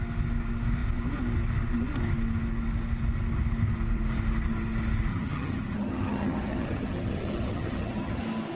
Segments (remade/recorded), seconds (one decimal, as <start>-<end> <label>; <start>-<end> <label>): 0.0-5.1 recorded; 5.1-8.2 remade; 8.2-8.6 recorded